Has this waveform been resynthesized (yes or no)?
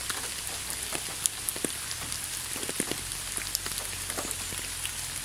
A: no